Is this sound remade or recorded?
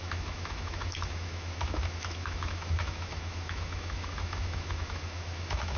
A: remade